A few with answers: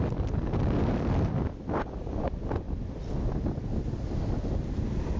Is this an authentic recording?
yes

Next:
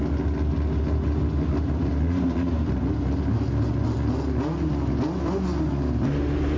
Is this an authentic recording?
yes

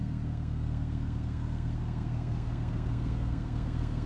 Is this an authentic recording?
no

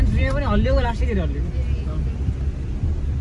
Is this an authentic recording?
yes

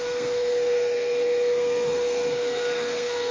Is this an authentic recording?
no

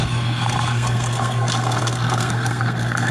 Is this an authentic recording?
no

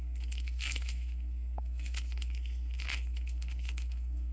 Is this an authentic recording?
no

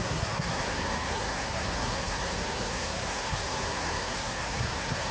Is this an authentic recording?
no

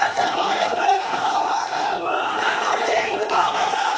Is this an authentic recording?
no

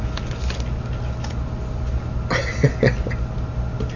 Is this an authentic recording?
yes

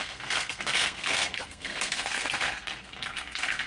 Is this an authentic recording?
no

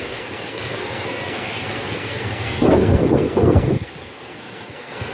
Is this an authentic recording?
no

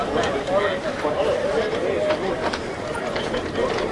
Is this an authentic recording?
yes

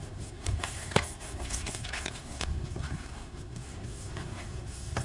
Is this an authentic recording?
no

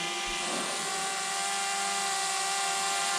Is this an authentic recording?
yes